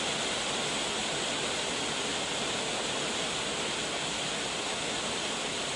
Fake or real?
real